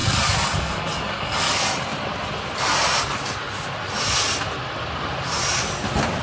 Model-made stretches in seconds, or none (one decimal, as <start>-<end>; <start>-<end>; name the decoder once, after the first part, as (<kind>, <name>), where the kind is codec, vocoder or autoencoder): 0.0-1.5 (codec, DAC)